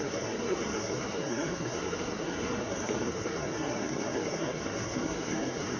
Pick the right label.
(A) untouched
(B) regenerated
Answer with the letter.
B